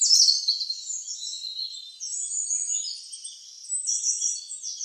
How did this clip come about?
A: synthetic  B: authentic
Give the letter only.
B